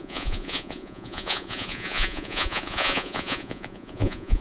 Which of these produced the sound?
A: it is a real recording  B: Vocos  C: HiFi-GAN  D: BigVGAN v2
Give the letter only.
B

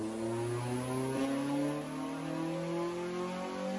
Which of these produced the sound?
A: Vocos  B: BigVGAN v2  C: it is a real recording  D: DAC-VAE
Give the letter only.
C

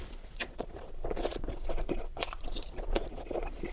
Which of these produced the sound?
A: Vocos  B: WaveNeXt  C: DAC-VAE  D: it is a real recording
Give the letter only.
A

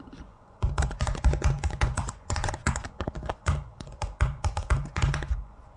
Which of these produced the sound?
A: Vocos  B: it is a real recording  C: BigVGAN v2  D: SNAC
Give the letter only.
A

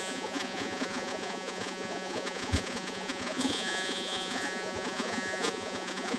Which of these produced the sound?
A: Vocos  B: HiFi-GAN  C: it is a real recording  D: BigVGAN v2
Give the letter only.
A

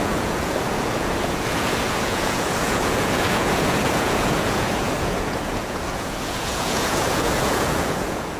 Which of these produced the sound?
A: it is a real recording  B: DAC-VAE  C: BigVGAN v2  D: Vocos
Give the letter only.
D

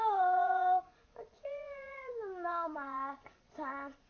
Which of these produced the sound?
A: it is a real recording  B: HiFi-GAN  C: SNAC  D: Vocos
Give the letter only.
D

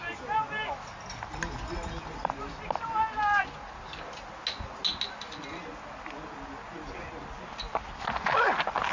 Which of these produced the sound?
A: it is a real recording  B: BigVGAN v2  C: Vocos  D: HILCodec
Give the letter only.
A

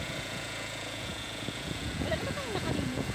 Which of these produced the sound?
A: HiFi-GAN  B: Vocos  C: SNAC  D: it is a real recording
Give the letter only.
B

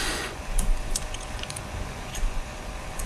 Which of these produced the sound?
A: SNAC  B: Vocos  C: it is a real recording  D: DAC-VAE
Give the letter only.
B